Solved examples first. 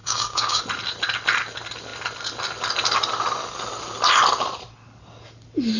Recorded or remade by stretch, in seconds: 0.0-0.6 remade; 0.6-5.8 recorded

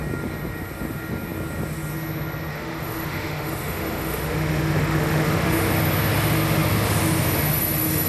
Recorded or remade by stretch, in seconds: 0.0-2.5 recorded; 2.5-5.6 remade; 5.6-8.1 recorded

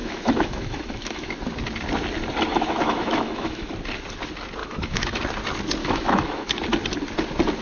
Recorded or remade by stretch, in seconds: 0.0-1.3 remade; 1.3-2.5 recorded; 2.5-3.7 remade; 3.7-4.6 recorded; 4.6-5.2 remade; 5.2-5.8 recorded; 5.8-6.6 remade; 6.6-7.6 recorded